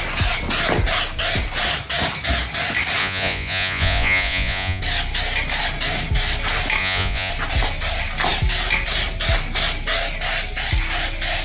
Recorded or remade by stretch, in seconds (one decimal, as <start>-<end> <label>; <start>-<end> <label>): 0.0-3.0 recorded; 3.0-4.8 remade; 4.8-6.8 recorded; 6.8-7.3 remade; 7.3-11.4 recorded

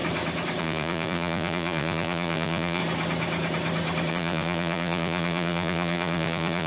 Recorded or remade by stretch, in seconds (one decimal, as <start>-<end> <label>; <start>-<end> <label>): 0.0-0.6 recorded; 0.6-2.8 remade; 2.8-4.1 recorded; 4.1-6.7 remade